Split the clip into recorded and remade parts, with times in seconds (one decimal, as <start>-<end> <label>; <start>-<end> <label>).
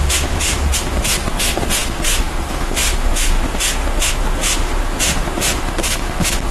0.0-6.5 remade